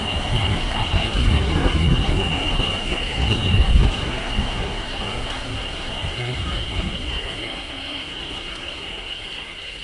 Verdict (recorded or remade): remade